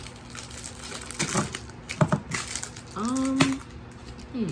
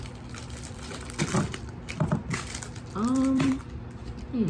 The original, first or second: first